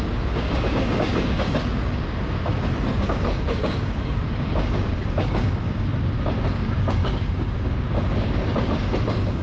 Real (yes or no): no